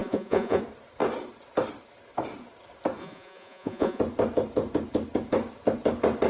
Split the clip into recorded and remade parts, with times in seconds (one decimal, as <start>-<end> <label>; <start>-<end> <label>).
0.0-0.6 remade; 0.6-3.0 recorded; 3.0-4.0 remade; 4.0-6.3 recorded